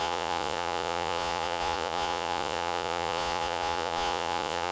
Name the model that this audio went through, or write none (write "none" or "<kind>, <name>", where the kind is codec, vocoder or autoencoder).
vocoder, Vocos